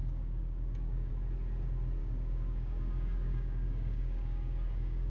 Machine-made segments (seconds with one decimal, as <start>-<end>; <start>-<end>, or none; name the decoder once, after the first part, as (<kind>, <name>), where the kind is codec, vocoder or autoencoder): 0.0-1.1 (codec, DAC); 2.0-5.1